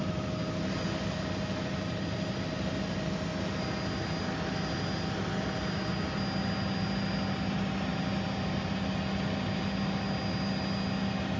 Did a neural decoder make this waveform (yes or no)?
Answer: no